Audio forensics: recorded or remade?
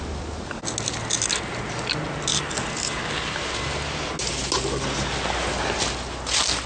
recorded